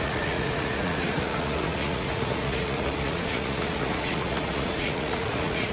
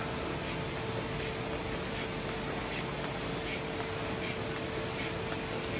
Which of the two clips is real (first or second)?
second